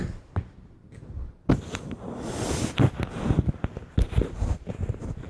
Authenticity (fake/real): real